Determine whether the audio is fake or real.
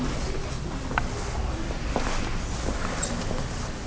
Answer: real